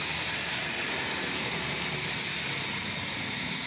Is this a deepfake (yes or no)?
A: no